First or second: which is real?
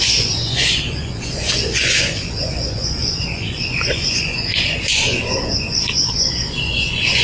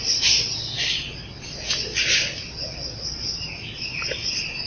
second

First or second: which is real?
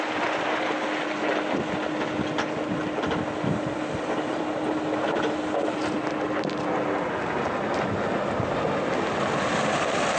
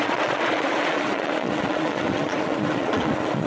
first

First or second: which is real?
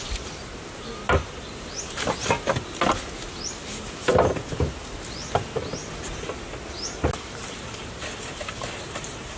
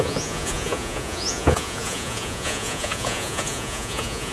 first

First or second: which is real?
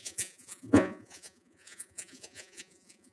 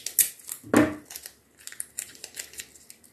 second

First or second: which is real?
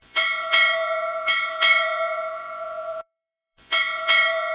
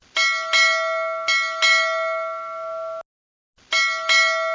second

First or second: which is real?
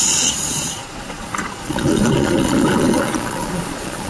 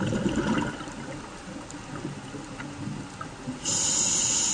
second